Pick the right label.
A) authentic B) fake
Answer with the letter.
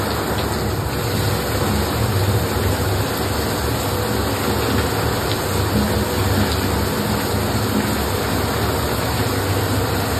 A